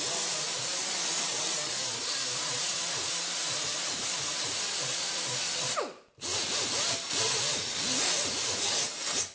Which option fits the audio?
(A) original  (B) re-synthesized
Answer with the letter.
A